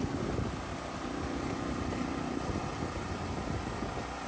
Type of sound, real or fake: real